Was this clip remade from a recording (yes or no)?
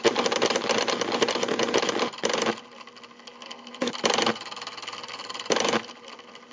no